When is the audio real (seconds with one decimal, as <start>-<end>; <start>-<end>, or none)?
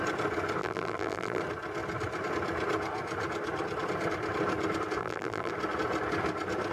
0.0-0.6; 1.4-5.0; 5.5-6.7